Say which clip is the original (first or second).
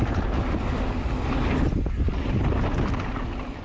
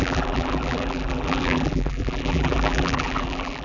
first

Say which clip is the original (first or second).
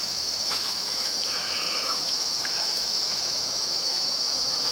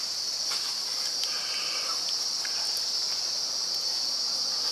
second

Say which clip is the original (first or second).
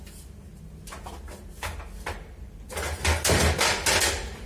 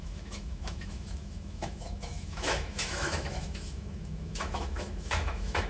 first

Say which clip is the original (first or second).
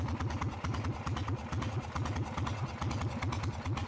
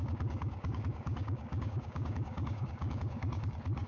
first